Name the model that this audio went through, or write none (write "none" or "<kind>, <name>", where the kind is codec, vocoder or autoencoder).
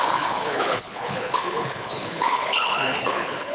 codec, HILCodec